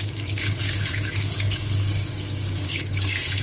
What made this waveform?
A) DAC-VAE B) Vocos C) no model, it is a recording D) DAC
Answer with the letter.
D